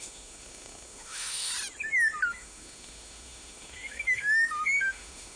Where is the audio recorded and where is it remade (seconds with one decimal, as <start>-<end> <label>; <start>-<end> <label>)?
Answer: 0.0-1.5 remade; 1.5-2.3 recorded; 2.3-5.4 remade